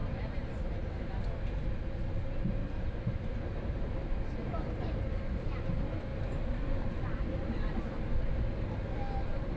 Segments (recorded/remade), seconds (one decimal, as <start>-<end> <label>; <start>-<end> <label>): 0.0-1.3 remade; 1.3-2.6 recorded; 2.6-4.7 remade; 4.7-6.1 recorded; 6.1-7.8 remade; 7.8-9.6 recorded

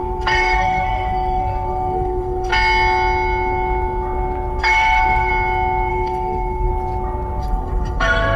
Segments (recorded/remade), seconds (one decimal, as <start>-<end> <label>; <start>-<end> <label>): 0.0-2.5 remade; 2.5-4.6 recorded; 4.6-5.3 remade; 5.3-5.9 recorded; 5.9-6.7 remade; 6.7-7.4 recorded; 7.4-8.4 remade

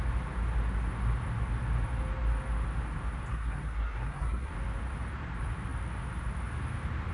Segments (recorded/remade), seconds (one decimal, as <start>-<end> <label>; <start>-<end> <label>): 0.0-3.3 recorded; 3.3-4.5 remade; 4.5-7.1 recorded

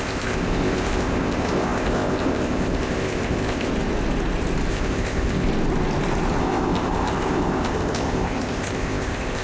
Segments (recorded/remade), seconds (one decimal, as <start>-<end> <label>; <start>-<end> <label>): 0.0-3.7 remade; 3.7-4.7 recorded; 4.7-5.5 remade; 5.5-6.4 recorded; 6.4-9.4 remade

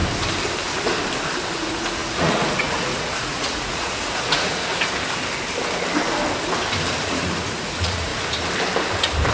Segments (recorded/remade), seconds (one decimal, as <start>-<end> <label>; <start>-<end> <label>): 0.0-1.5 recorded; 1.5-4.7 remade; 4.7-7.0 recorded; 7.0-8.1 remade; 8.1-9.3 recorded

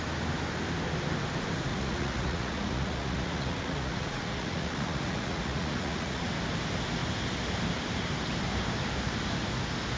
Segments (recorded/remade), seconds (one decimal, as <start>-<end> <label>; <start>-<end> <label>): 0.0-1.7 recorded; 1.7-6.3 remade; 6.3-10.0 recorded

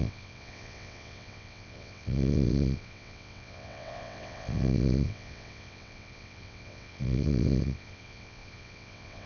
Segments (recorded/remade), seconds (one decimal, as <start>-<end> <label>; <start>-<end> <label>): 0.0-9.3 remade

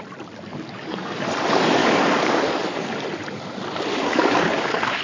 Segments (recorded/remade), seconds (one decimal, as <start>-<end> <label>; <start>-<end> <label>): 0.0-0.5 recorded; 0.5-1.2 remade; 1.2-1.8 recorded; 1.8-2.6 remade; 2.6-3.9 recorded; 3.9-5.0 remade